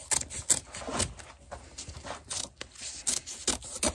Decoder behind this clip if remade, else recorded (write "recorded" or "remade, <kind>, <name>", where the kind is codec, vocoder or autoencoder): recorded